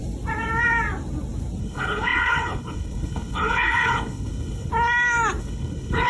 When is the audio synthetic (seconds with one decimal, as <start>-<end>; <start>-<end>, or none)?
1.6-4.7; 5.4-6.1